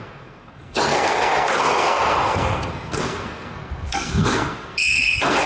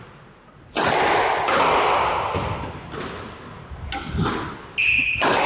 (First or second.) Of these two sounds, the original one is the second